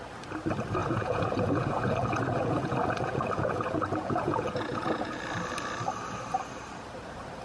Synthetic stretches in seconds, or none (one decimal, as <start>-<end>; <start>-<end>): 0.8-5.2